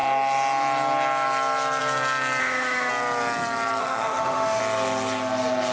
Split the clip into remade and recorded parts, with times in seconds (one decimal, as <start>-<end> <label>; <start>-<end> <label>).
0.0-2.4 recorded; 2.4-2.9 remade; 2.9-3.8 recorded; 3.8-4.6 remade; 4.6-5.7 recorded